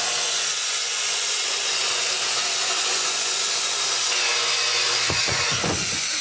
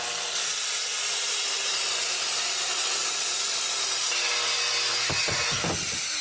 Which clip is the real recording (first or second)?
second